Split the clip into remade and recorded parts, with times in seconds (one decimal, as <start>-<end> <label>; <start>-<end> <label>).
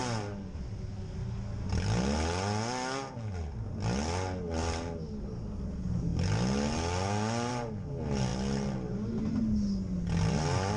0.0-10.8 recorded